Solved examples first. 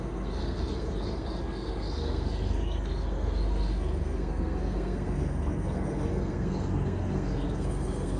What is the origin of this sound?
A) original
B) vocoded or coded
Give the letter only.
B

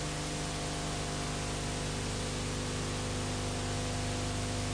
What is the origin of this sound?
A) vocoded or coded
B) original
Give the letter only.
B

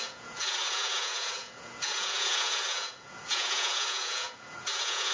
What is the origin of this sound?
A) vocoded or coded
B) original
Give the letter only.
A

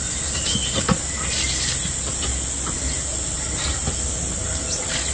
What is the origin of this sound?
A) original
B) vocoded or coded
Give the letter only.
A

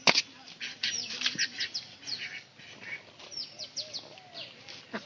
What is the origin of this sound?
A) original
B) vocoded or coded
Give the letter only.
A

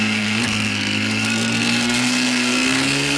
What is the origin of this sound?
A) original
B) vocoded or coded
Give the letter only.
B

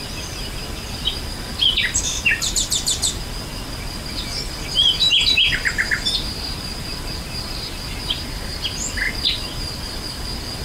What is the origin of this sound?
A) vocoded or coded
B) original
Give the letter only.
B